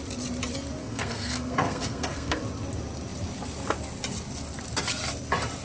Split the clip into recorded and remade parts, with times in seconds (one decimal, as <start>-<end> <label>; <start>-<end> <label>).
0.0-0.8 recorded; 0.8-2.4 remade; 2.4-5.6 recorded